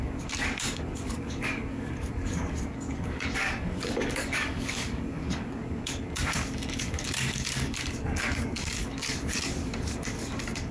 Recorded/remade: remade